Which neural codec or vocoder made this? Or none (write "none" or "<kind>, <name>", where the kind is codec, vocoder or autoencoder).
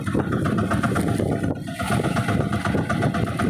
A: none